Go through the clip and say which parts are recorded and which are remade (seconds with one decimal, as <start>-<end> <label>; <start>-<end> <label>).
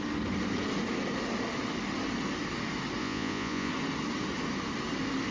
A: 0.0-3.0 recorded; 3.0-3.7 remade; 3.7-5.3 recorded